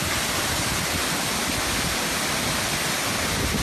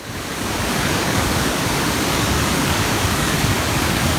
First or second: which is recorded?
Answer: first